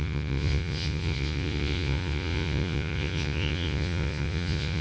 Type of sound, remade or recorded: remade